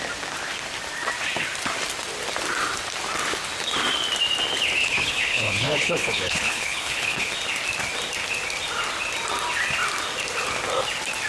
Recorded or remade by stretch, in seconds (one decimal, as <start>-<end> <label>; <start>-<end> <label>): 0.0-4.8 recorded; 4.8-7.3 remade; 7.3-11.3 recorded